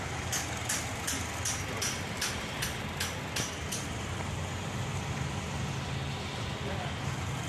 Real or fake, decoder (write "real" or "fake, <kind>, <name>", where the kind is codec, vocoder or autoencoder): real